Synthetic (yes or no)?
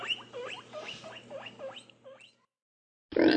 no